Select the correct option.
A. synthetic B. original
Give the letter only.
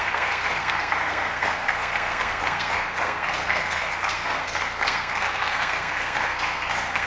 A